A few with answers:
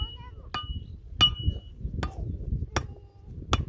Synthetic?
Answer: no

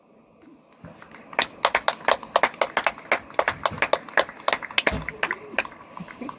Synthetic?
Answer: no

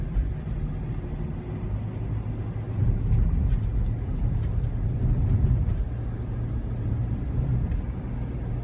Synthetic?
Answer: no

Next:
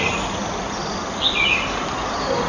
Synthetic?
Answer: no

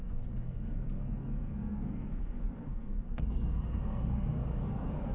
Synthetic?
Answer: yes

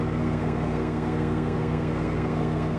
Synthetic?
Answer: yes